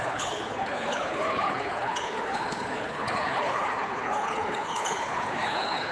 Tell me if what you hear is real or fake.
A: fake